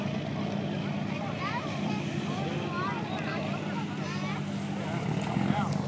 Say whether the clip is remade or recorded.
recorded